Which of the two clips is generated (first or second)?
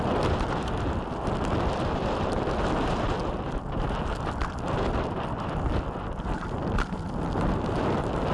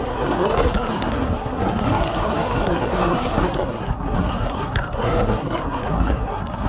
second